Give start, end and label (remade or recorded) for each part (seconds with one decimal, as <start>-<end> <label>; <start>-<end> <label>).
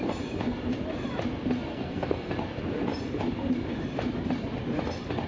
0.0-1.7 recorded; 1.7-2.3 remade; 2.3-5.3 recorded